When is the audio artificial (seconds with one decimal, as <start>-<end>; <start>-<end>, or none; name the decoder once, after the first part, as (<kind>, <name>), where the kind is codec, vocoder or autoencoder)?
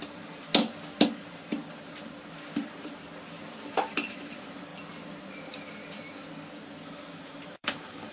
0.0-0.5 (vocoder, BigVGAN v2); 1.3-4.7; 7.2-8.1